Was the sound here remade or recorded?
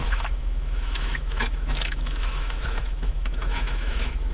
remade